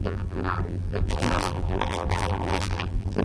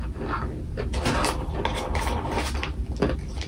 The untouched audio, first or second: second